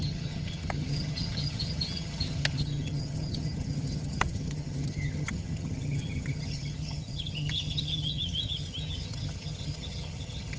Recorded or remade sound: remade